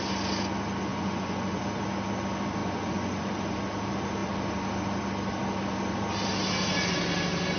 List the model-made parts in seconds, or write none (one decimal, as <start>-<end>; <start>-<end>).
0.9-1.6; 2.6-3.3